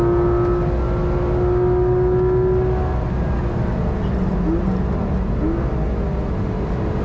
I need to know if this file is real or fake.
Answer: real